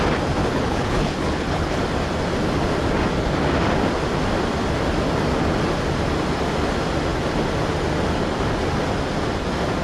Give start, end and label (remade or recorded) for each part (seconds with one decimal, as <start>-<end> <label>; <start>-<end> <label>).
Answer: 0.0-0.4 recorded; 0.4-1.8 remade; 1.8-9.8 recorded

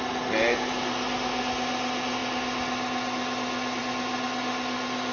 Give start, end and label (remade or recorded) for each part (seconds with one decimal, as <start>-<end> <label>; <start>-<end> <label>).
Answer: 0.0-5.1 recorded

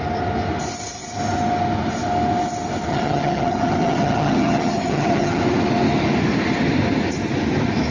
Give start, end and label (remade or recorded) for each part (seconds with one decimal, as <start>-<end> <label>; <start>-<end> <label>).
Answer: 0.0-2.9 recorded; 2.9-5.4 remade; 5.4-7.9 recorded

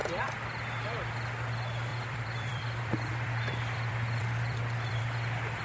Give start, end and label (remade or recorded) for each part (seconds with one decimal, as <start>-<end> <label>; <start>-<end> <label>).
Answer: 0.0-1.9 recorded; 1.9-5.0 remade; 5.0-5.6 recorded